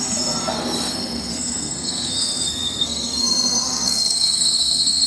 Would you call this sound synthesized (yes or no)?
yes